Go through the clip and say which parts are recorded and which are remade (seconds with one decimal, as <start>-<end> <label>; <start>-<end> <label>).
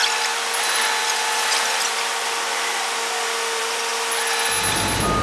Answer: 0.0-5.2 recorded